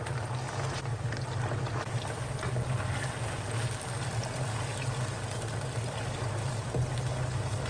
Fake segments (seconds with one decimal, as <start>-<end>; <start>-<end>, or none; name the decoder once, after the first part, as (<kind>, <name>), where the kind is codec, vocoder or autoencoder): none